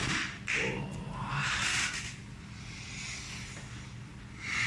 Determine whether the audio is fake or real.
real